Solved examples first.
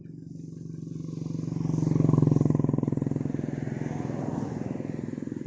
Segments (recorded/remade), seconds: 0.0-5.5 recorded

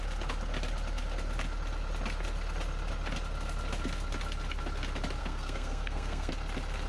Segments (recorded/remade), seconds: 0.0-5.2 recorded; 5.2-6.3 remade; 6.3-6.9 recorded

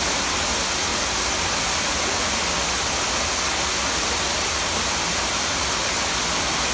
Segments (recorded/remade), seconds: 0.0-6.7 recorded